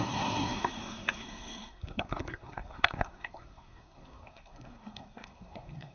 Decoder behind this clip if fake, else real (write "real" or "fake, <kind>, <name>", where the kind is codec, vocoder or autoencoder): fake, codec, SNAC